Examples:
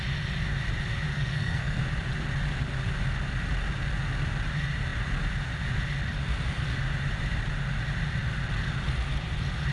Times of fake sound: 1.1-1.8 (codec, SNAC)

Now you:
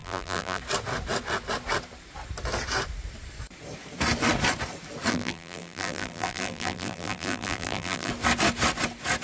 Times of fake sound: 0.0-0.6 (vocoder, BigVGAN v2); 5.1-8.1

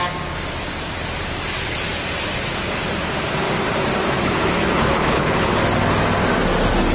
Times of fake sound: 4.2-5.6 (codec, HILCodec)

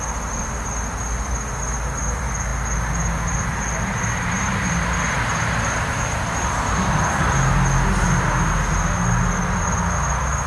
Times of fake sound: none

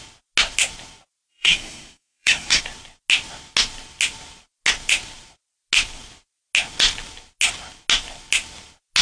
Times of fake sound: 1.3-2.6 (codec, SNAC)

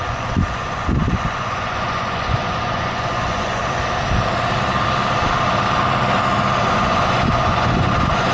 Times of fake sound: 0.0-3.6 (vocoder, Vocos); 6.6-8.3

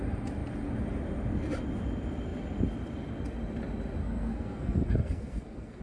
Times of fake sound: 4.0-5.8 (codec, SNAC)

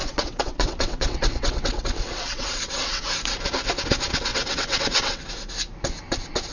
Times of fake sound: 0.0-3.0 (vocoder, WaveNeXt); 4.3-5.3